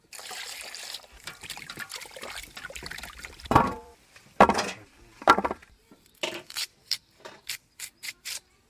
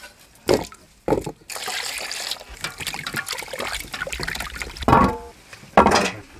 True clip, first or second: second